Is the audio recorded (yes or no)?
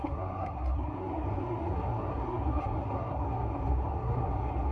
no